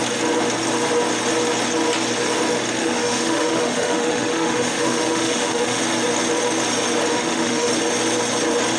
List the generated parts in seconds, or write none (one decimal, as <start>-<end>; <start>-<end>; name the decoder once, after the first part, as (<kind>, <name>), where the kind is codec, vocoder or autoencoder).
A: 2.8-5.8 (autoencoder, DAC-VAE); 7.1-7.7